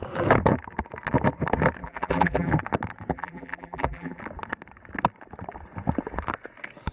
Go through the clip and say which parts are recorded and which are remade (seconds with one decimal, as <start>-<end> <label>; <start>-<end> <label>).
0.0-1.8 recorded; 1.8-2.5 remade; 2.5-3.1 recorded; 3.1-4.2 remade; 4.2-6.9 recorded